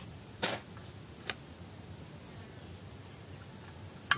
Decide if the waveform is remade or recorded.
recorded